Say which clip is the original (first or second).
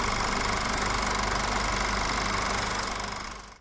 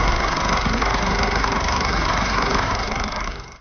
first